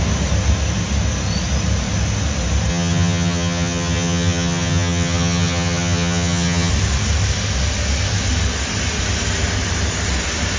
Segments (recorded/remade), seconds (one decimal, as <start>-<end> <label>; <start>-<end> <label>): 0.0-2.7 recorded; 2.7-6.7 remade; 6.7-10.6 recorded